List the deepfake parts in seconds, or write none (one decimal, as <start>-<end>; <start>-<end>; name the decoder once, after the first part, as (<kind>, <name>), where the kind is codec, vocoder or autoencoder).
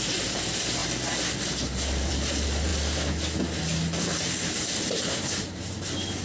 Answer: 0.0-0.8 (vocoder, BigVGAN v2); 1.5-2.7; 4.8-6.2